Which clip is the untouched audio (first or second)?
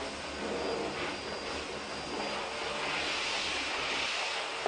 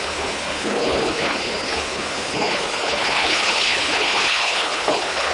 first